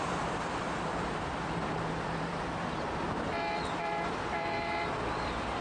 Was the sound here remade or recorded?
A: remade